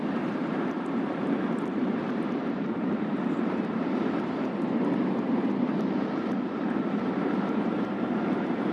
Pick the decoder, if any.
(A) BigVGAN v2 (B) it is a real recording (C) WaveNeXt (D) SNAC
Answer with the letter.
A